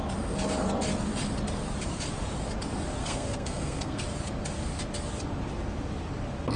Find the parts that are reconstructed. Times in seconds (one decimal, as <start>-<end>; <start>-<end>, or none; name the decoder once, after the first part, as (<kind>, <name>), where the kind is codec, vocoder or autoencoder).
3.0-4.0 (codec, SNAC)